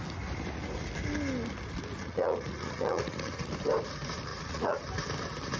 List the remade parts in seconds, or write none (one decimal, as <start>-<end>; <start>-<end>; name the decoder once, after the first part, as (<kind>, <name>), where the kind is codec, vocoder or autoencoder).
2.0-3.5 (vocoder, Vocos); 4.3-4.8